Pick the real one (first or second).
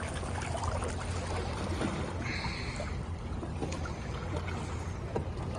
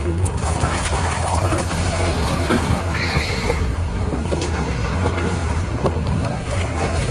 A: first